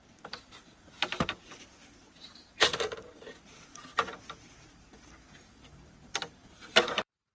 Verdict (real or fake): fake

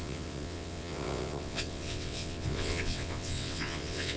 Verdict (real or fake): fake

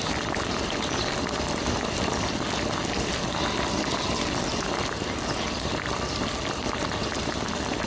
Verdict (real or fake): fake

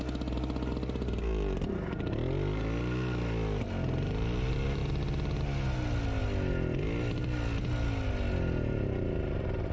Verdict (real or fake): real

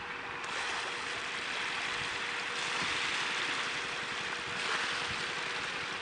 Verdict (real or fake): real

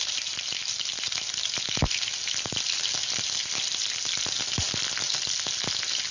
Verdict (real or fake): real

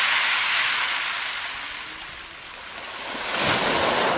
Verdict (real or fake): real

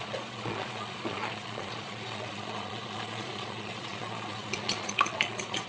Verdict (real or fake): fake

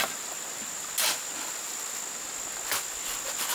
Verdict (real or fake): real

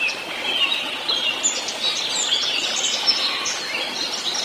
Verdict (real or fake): real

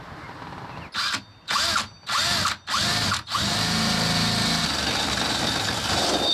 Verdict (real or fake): real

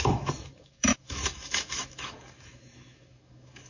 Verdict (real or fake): fake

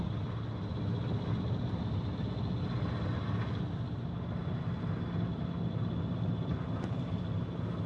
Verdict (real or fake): real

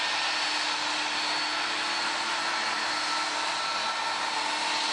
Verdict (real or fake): real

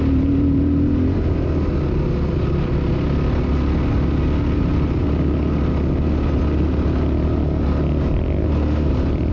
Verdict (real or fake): real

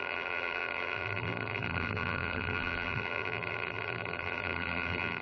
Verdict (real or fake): fake